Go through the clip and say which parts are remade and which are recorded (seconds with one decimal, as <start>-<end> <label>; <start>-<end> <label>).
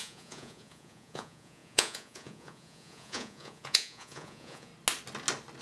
0.0-4.7 remade; 4.7-5.6 recorded